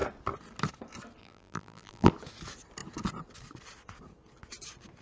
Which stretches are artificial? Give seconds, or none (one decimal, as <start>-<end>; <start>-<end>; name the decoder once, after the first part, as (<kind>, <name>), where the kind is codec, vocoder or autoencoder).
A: 1.2-2.1 (vocoder, BigVGAN v2)